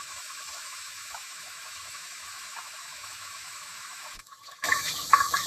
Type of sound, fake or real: fake